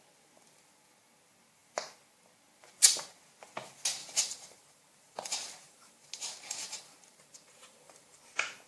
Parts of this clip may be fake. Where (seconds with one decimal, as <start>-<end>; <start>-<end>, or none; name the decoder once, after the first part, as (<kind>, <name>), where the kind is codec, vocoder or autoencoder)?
4.0-8.2 (vocoder, BigVGAN v2)